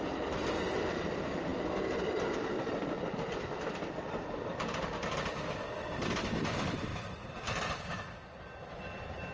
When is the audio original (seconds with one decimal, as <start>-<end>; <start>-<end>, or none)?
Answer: 0.0-9.3